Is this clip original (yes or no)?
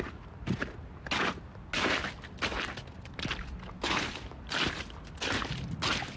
yes